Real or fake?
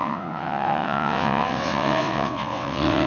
fake